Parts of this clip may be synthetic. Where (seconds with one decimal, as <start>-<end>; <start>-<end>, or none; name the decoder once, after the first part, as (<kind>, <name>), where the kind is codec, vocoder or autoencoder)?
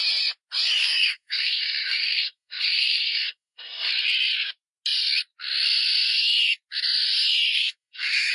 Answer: 0.8-3.9 (codec, SNAC); 7.5-8.3